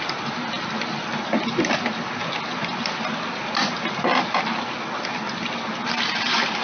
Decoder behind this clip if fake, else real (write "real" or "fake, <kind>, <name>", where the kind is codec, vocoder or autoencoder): real